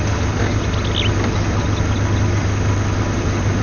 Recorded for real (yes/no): yes